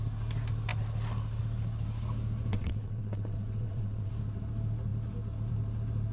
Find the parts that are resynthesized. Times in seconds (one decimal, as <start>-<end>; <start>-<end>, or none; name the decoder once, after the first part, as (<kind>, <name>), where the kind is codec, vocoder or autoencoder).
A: 2.5-4.1 (vocoder, WaveNeXt)